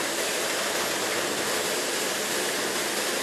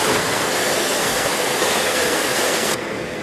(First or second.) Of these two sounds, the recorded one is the first